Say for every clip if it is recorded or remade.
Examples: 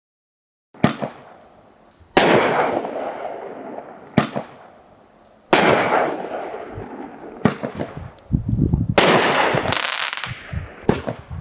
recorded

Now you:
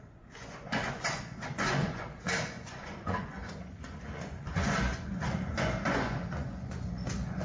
remade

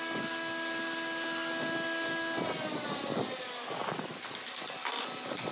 recorded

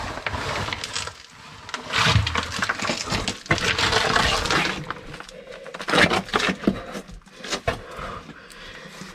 recorded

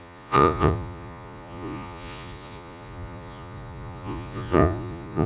remade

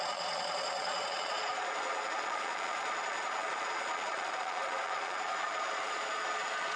remade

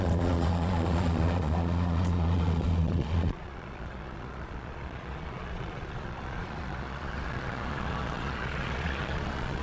remade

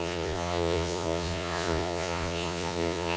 remade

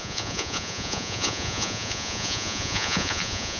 remade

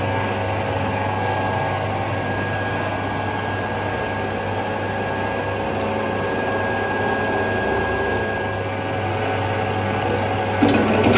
recorded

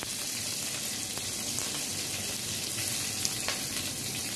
recorded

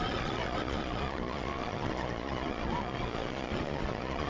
remade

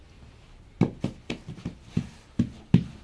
recorded